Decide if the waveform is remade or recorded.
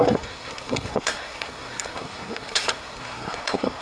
remade